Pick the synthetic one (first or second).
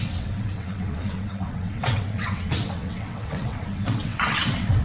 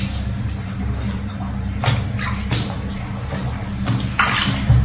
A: first